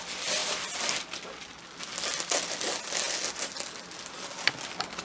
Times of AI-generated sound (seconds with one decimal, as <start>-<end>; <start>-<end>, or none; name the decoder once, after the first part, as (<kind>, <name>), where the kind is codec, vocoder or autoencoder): none